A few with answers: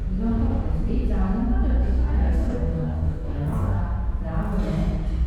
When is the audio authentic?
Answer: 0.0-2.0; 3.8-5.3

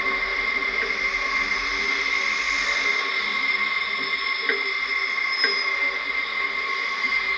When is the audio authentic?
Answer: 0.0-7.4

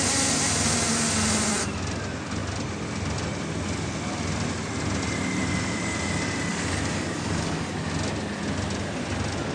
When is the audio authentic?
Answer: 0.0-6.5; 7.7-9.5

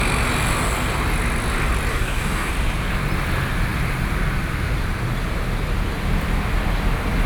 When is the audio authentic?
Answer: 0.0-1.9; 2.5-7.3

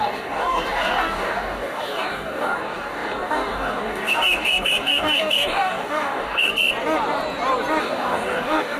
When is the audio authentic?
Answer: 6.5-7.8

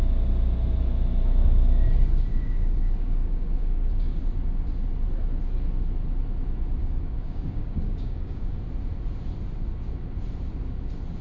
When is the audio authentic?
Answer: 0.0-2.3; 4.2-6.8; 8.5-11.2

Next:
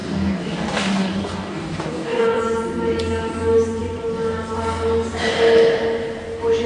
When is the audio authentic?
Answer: 2.4-6.7

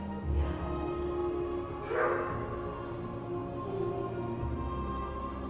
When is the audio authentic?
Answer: 0.0-5.5